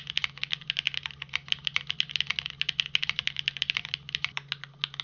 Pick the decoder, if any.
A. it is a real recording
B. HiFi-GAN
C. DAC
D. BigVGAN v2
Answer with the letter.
A